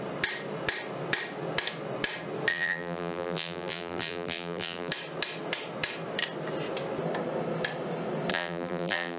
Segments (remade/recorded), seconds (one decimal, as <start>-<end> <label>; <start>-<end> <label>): 0.0-2.5 recorded; 2.5-4.9 remade; 4.9-8.3 recorded; 8.3-9.2 remade